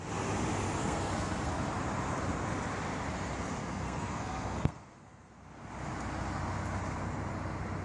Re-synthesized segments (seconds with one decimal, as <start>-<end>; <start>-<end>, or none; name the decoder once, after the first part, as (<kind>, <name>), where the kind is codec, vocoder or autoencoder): 0.8-1.5 (codec, SNAC); 3.6-5.3